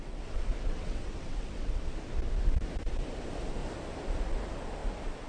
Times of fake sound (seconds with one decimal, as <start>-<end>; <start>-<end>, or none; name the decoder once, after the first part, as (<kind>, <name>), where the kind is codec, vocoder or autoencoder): 0.0-1.8 (vocoder, WaveNeXt)